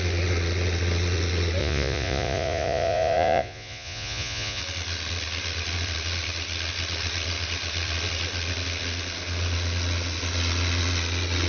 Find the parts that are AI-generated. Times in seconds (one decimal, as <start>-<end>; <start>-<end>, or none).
1.6-4.6